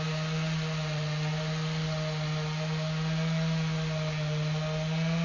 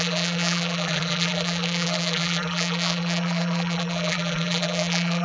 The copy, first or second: second